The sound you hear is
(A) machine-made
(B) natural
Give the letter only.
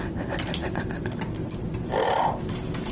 B